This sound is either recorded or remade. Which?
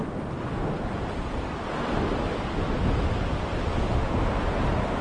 recorded